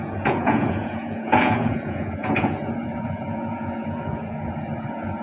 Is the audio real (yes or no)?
no